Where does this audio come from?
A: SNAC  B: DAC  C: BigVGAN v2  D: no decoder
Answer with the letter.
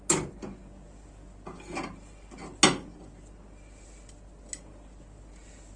D